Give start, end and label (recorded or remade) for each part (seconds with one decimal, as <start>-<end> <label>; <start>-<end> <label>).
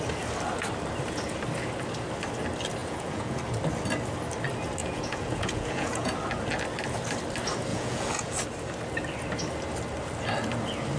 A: 0.0-2.8 recorded; 2.8-3.4 remade; 3.4-4.8 recorded; 4.8-6.1 remade; 6.1-7.7 recorded; 7.7-8.4 remade; 8.4-11.0 recorded